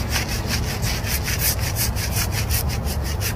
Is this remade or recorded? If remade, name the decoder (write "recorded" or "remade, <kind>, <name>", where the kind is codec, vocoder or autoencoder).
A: recorded